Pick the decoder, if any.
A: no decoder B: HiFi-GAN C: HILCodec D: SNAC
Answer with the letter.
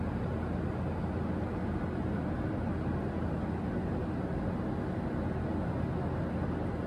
A